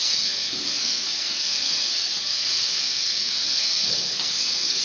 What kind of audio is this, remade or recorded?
remade